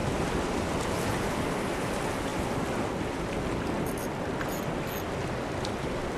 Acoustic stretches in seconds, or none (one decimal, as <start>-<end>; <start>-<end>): 0.0-6.2